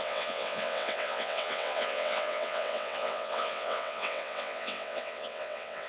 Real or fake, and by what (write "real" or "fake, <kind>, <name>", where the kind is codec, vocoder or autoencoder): fake, vocoder, WaveNeXt